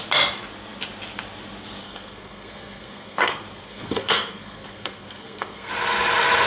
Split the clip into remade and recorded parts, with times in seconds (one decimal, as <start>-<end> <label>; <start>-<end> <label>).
0.0-1.8 recorded; 1.8-5.7 remade; 5.7-6.5 recorded